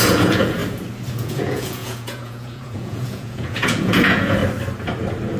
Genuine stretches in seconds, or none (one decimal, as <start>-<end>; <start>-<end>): 0.6-1.1; 4.4-5.4